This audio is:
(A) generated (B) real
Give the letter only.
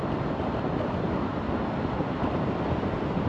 B